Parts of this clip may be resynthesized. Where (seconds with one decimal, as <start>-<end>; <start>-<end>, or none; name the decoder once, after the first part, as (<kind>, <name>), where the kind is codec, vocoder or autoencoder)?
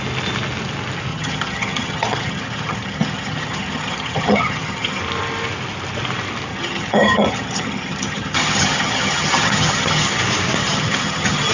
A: 1.1-5.0 (vocoder, HiFi-GAN); 6.5-10.2; 10.6-11.5